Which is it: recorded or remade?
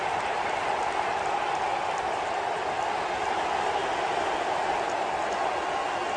recorded